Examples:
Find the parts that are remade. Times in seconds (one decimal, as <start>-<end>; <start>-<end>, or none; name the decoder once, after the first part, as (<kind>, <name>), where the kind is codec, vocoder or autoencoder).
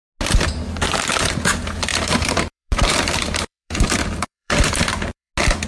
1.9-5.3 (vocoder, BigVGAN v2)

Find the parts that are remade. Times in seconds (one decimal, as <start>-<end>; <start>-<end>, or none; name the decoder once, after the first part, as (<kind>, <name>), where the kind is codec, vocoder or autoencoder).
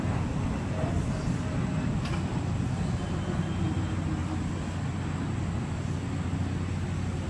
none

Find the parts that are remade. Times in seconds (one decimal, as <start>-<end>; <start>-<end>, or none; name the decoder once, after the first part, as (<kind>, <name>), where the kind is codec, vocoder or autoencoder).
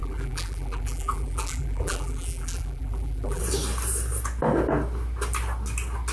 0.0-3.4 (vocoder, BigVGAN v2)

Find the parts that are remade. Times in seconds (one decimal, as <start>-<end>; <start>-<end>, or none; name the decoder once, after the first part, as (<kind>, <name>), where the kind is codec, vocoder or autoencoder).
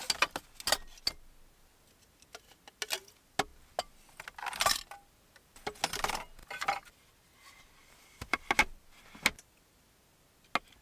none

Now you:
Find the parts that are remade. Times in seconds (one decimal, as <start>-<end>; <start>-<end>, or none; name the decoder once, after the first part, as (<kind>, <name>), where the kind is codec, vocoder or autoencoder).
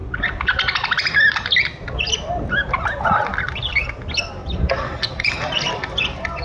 none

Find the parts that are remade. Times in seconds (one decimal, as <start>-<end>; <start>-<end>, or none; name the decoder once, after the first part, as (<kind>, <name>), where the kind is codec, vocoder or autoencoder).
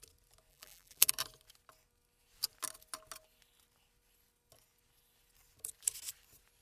0.5-1.1 (vocoder, BigVGAN v2)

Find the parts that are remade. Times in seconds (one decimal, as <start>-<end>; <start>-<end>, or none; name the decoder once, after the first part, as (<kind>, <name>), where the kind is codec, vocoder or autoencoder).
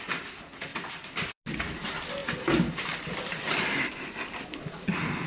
0.7-1.4 (vocoder, BigVGAN v2); 2.2-3.9